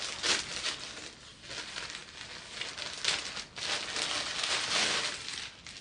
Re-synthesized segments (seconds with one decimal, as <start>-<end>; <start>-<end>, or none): none